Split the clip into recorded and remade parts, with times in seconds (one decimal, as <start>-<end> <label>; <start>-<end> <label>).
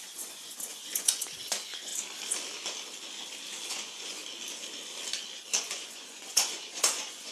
0.0-1.9 remade; 1.9-3.7 recorded; 3.7-4.2 remade; 4.2-5.6 recorded; 5.6-7.3 remade